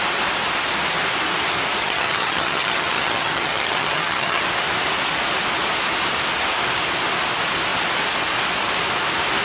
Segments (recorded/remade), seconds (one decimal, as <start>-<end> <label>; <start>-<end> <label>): 0.0-1.8 recorded; 1.8-4.4 remade; 4.4-9.4 recorded